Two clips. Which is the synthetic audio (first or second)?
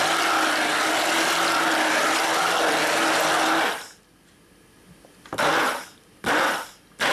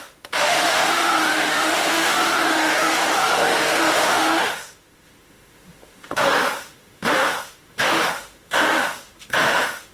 second